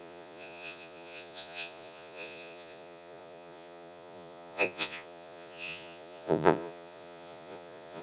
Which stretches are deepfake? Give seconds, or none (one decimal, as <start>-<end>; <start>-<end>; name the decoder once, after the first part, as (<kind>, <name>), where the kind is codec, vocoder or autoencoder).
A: 0.0-8.0 (vocoder, Vocos)